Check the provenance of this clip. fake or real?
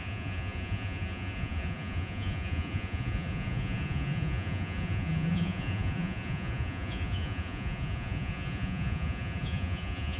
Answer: fake